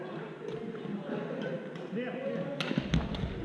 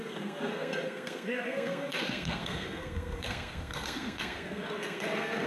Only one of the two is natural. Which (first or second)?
first